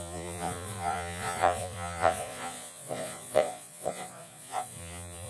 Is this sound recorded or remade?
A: remade